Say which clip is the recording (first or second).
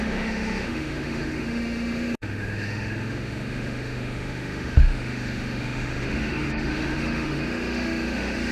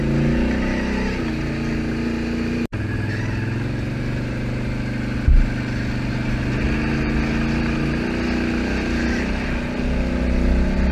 second